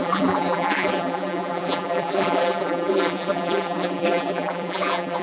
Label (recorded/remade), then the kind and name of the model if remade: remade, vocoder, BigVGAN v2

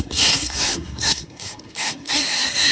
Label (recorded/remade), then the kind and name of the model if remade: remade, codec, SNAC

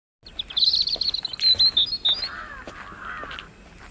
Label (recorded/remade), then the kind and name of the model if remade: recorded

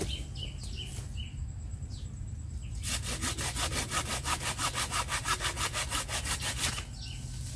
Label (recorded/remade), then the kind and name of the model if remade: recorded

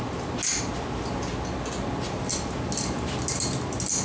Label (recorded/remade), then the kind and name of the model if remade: recorded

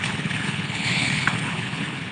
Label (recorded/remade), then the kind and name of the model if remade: remade, codec, HILCodec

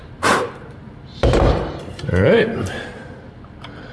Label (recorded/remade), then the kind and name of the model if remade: remade, vocoder, BigVGAN v2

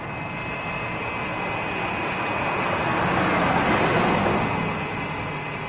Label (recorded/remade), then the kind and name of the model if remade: recorded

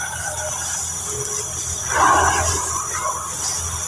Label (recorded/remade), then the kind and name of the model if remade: recorded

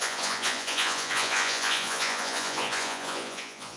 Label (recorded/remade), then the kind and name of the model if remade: remade, vocoder, Vocos